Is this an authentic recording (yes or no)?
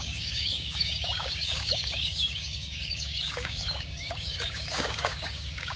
no